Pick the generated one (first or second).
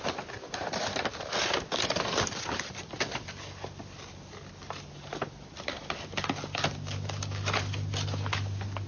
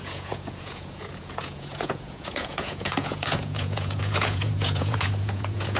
second